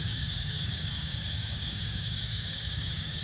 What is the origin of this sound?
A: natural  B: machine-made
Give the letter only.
B